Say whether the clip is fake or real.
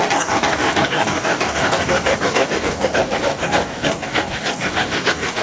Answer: fake